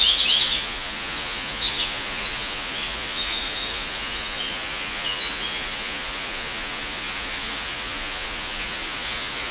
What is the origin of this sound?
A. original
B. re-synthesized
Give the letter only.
B